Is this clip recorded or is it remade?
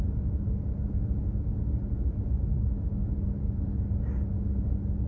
recorded